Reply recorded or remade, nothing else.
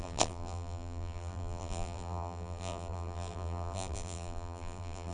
remade